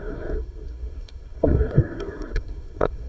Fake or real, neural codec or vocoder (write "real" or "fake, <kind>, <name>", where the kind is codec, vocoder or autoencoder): fake, codec, SNAC